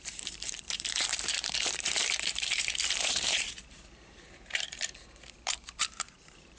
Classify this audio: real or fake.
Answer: fake